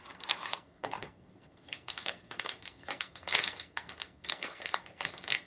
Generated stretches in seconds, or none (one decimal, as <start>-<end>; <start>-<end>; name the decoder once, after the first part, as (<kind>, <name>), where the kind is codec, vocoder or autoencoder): 0.0-5.5 (codec, SNAC)